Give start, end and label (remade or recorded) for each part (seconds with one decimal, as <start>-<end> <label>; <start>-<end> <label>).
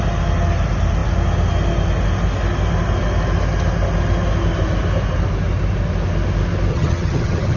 0.0-6.7 recorded; 6.7-7.6 remade